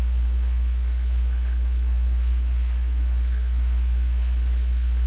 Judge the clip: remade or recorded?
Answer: remade